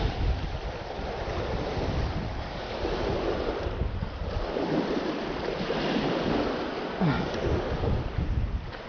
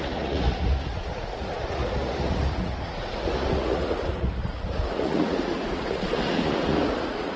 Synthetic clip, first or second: second